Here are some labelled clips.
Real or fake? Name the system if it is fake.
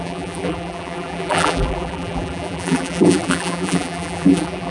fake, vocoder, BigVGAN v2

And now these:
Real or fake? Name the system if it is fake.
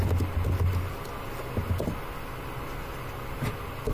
real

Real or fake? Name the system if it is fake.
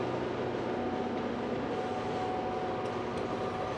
real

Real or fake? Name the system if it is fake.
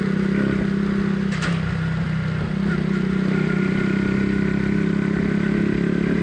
real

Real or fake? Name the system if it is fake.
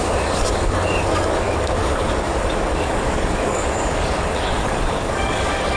fake, codec, DAC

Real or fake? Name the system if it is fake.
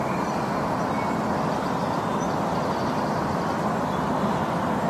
real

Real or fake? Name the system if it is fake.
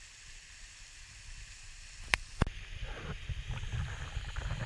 real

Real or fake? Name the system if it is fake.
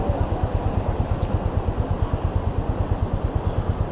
real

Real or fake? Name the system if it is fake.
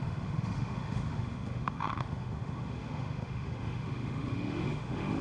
fake, autoencoder, DAC-VAE